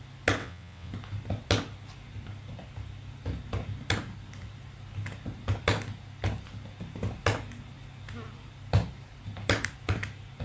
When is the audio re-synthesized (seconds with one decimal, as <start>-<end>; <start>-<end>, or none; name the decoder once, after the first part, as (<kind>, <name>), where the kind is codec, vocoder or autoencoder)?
0.4-0.9 (vocoder, WaveNeXt)

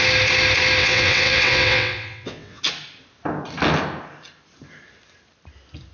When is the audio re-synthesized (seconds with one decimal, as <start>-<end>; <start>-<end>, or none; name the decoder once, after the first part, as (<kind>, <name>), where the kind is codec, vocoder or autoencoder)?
0.8-2.6 (vocoder, WaveNeXt)

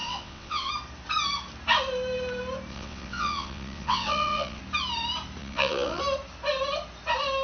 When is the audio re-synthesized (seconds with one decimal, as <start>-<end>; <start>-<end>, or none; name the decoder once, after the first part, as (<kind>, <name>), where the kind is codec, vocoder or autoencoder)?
0.0-0.7 (vocoder, WaveNeXt); 2.7-4.6; 5.4-6.0

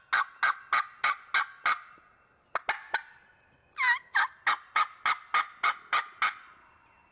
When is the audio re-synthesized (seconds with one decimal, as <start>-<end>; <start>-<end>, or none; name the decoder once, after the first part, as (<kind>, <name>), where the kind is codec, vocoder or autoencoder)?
none

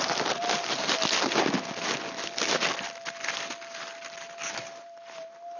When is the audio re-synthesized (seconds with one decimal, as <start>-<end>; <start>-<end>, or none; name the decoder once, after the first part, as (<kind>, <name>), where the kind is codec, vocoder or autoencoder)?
none

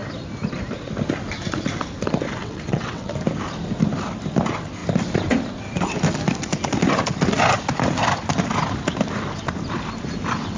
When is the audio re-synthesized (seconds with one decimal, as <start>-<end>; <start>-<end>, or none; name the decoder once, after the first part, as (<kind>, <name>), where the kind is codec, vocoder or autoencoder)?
2.4-3.1 (vocoder, WaveNeXt)